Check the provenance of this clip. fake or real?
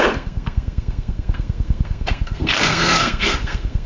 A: fake